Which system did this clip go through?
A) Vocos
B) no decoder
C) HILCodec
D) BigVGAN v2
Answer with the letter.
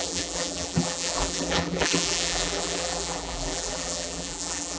D